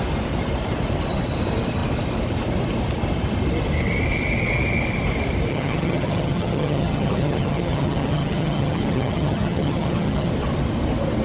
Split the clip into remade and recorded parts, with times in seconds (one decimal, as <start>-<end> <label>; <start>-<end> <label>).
0.0-5.5 recorded; 5.5-10.3 remade; 10.3-11.2 recorded